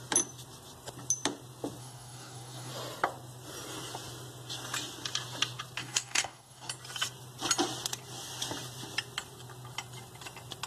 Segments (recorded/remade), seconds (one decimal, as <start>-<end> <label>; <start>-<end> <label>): 0.0-1.8 recorded; 1.8-2.7 remade; 2.7-5.8 recorded; 5.8-6.7 remade; 6.7-10.7 recorded